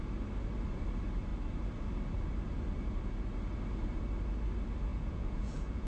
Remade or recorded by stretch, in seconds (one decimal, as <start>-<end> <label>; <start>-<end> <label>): 0.0-4.9 recorded; 4.9-5.9 remade